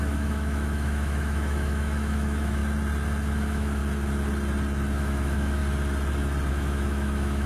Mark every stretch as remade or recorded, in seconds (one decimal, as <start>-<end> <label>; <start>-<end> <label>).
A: 0.0-2.6 remade; 2.6-3.3 recorded; 3.3-3.8 remade; 3.8-5.0 recorded; 5.0-5.6 remade; 5.6-6.5 recorded; 6.5-7.5 remade